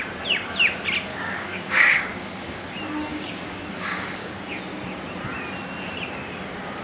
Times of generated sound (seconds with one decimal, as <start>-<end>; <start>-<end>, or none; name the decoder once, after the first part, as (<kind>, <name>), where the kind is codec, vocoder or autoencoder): 1.1-2.6 (codec, DAC); 3.1-4.3